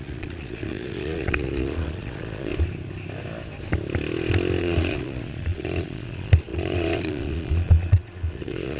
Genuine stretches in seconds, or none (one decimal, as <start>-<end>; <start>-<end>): 2.5-4.6